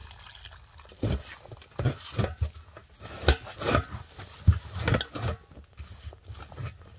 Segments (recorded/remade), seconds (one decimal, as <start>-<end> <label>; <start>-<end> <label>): 0.0-7.0 recorded